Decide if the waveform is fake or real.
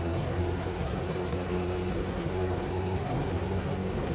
fake